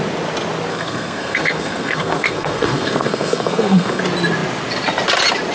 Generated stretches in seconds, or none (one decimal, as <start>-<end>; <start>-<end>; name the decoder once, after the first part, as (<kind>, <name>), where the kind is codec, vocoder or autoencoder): 0.7-4.0 (codec, SNAC)